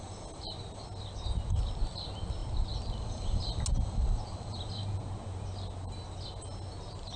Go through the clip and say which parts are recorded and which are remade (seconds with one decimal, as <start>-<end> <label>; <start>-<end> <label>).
0.0-7.2 recorded